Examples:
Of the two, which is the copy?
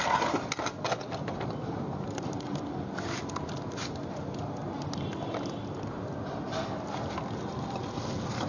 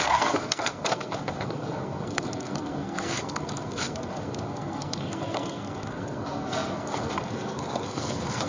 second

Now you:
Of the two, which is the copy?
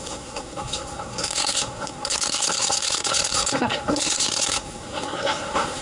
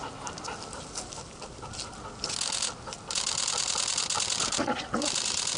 first